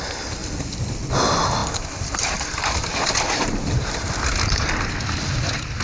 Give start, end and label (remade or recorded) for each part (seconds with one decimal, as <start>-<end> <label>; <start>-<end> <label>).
0.0-5.8 recorded